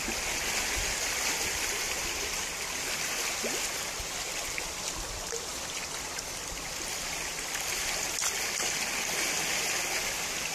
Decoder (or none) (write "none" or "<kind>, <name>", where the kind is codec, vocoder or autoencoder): none